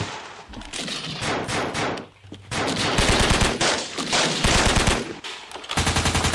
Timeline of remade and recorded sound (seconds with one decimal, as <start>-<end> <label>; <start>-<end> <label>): 0.0-6.3 recorded